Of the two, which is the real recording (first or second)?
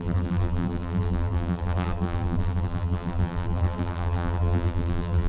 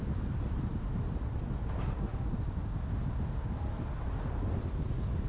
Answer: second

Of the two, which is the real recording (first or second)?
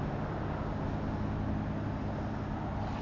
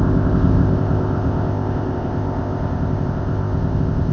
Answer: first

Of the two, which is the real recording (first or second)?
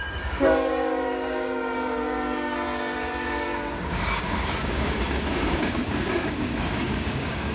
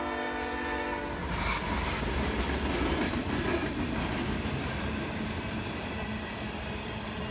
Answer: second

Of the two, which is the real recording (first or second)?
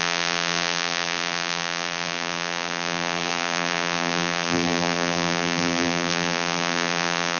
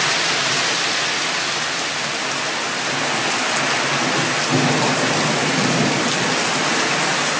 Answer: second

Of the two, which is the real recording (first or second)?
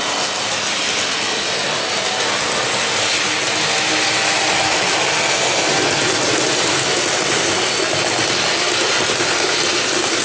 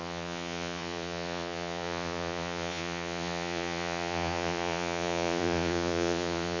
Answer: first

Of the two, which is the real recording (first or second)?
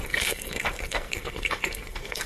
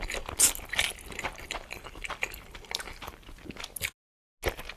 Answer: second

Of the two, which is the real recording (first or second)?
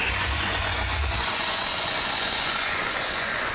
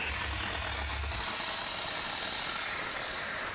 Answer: second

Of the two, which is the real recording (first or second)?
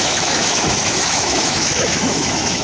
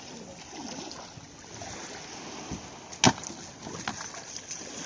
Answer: second